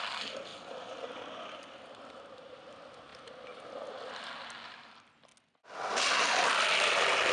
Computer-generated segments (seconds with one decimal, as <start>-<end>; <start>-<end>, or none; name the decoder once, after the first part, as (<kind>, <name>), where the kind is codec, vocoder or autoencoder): 0.0-3.1 (vocoder, BigVGAN v2); 4.7-5.3; 6.4-7.3